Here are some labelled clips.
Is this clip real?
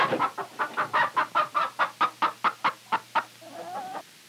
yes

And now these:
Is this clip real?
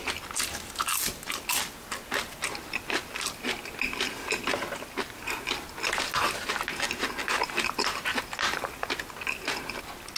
yes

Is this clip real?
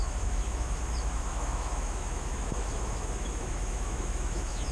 no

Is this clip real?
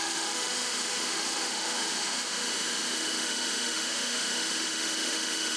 no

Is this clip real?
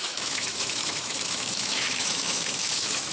no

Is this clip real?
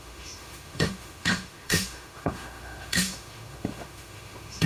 no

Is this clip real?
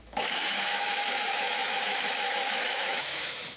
no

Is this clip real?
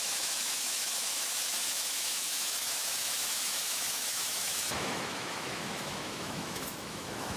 no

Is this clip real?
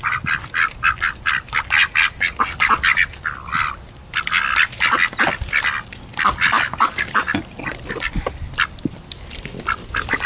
yes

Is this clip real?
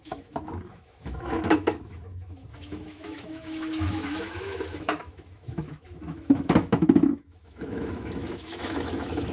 no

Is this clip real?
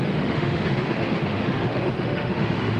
no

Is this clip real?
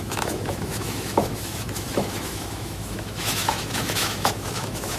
no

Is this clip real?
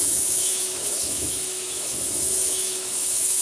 no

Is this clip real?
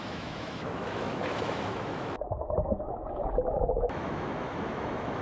no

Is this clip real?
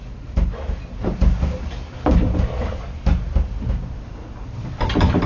yes